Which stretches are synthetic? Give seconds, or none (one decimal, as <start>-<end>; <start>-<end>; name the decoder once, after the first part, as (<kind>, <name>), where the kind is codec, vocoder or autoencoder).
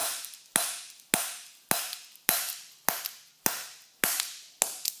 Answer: none